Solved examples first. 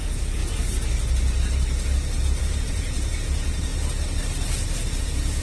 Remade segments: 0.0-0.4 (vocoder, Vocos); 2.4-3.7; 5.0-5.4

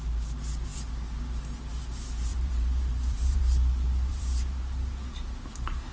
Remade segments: 2.3-3.4 (vocoder, BigVGAN v2); 4.1-4.6

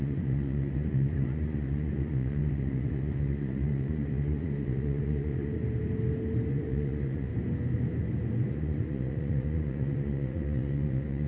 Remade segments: 0.0-5.6 (vocoder, Vocos); 6.5-7.3; 8.5-11.3

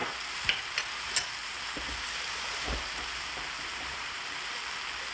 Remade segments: 0.0-0.5 (vocoder, BigVGAN v2); 1.4-4.5